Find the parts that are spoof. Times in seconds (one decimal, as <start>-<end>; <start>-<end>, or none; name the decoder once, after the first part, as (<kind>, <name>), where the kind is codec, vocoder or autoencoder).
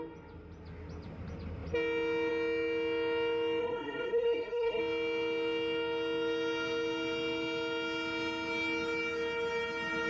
3.6-4.8 (codec, SNAC)